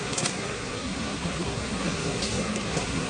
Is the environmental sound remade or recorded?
remade